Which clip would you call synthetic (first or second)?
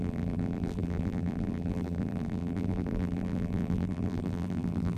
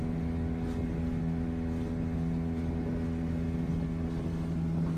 first